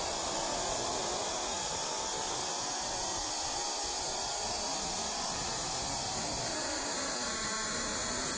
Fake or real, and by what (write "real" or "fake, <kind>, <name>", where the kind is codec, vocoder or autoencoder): real